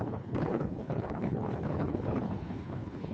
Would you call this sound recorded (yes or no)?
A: no